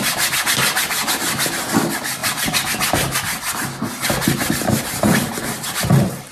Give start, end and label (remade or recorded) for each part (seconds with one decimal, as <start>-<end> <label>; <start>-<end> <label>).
0.0-6.3 recorded